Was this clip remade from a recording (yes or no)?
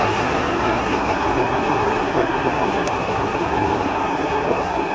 yes